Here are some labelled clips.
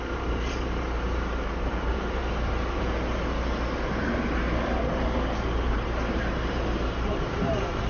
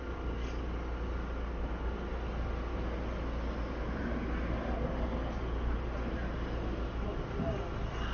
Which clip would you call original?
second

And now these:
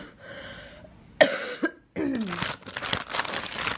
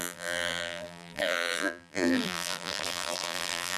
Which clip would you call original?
first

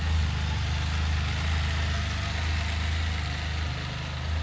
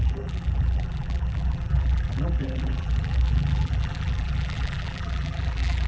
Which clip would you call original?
first